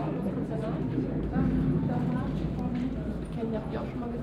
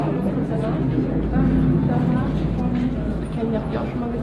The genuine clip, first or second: second